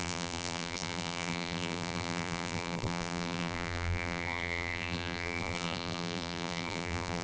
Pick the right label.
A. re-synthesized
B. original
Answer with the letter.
A